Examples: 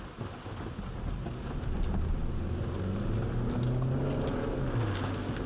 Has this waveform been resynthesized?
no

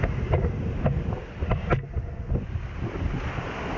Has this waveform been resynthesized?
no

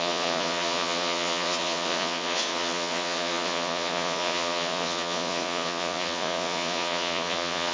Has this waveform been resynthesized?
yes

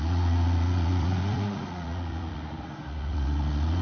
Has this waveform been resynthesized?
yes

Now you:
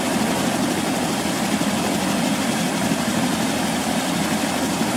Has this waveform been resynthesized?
no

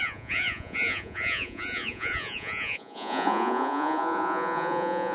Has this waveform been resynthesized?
yes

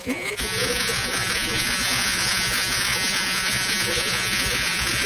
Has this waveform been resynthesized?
yes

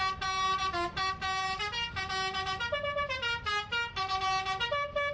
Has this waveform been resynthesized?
no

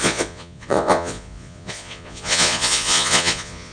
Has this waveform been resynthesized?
yes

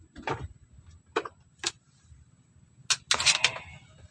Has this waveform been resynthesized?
no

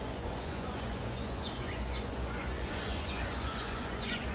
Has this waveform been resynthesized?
yes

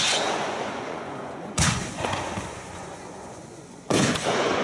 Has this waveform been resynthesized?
yes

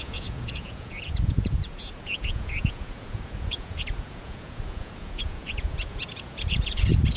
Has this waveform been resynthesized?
yes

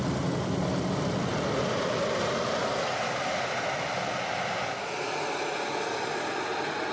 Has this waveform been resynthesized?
no